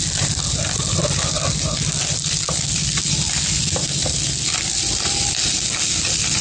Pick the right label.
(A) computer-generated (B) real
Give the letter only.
B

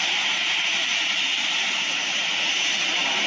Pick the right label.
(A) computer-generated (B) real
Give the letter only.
B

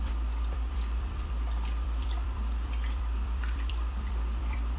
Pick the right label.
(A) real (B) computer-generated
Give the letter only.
B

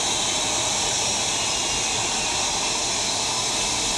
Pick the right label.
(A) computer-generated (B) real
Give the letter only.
B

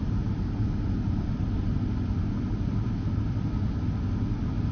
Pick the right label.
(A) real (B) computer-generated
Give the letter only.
A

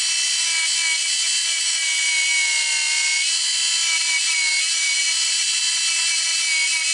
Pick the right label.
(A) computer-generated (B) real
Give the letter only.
B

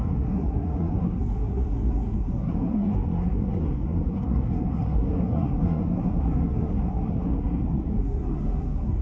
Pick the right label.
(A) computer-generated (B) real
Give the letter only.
A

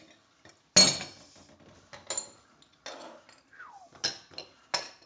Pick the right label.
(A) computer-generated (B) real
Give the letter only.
B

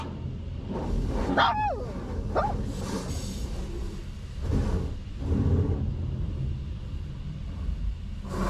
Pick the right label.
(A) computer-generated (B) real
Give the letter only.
B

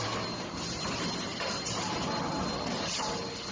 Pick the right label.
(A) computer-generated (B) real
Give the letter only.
B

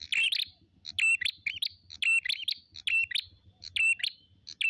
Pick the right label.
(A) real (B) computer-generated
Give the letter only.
A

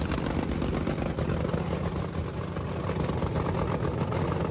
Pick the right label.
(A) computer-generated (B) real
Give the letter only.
B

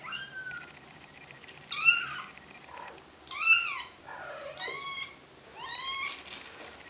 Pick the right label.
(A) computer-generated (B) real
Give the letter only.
B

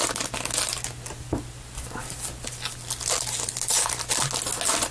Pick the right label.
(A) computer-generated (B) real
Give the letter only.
B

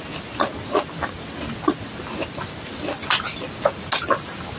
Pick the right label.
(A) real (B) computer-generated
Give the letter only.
A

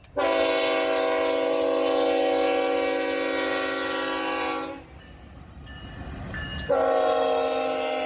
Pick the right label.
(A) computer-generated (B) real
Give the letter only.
B